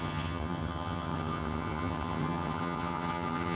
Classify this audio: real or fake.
fake